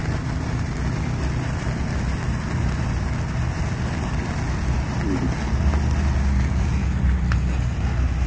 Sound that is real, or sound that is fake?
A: real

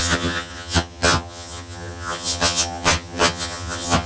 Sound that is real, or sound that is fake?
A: fake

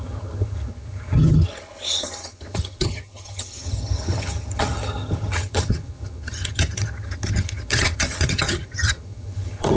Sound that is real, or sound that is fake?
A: fake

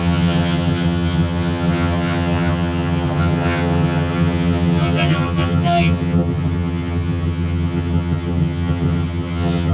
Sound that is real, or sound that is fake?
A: fake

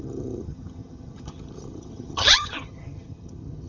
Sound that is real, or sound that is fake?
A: fake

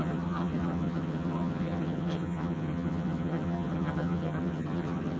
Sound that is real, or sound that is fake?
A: fake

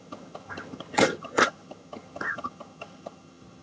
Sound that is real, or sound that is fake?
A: fake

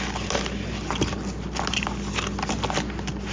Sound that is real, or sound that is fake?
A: real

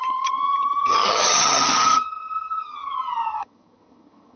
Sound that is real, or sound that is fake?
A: fake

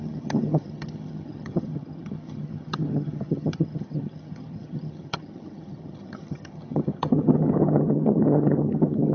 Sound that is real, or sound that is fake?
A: fake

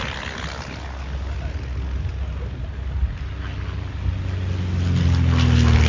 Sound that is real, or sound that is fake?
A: real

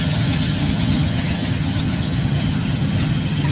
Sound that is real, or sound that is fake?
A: fake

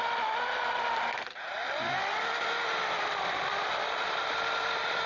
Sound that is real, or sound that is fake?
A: real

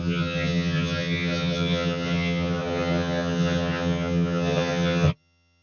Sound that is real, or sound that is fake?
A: fake